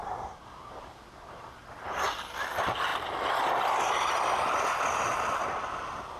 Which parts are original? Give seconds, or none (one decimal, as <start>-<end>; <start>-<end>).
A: 0.0-6.2